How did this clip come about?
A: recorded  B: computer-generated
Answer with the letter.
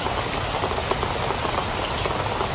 A